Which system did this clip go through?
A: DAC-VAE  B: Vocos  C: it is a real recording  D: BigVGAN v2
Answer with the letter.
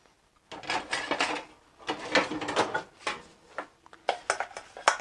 C